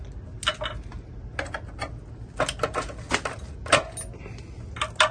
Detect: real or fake real